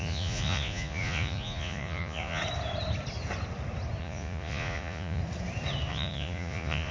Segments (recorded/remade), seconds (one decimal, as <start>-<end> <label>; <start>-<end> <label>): 0.0-2.4 remade; 2.4-4.0 recorded; 4.0-5.2 remade; 5.2-5.9 recorded; 5.9-6.9 remade